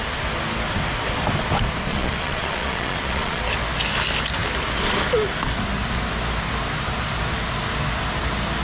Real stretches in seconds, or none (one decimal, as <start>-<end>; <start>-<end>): 0.0-1.9; 3.4-8.6